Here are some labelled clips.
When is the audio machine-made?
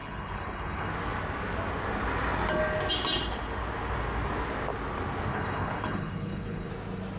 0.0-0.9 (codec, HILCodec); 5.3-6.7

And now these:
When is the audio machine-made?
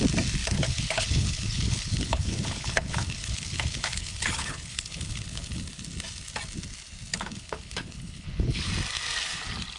0.4-5.6 (codec, HILCodec); 7.1-8.7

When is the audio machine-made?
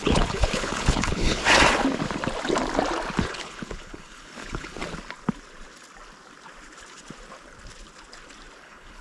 0.0-1.4 (codec, HILCodec); 3.2-4.8; 8.6-9.0